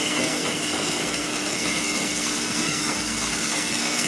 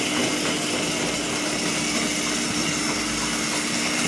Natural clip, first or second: second